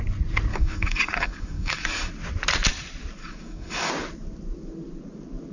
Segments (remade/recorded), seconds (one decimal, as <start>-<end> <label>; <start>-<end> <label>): 0.0-0.5 recorded; 0.5-2.1 remade; 2.1-3.2 recorded; 3.2-3.9 remade; 3.9-5.5 recorded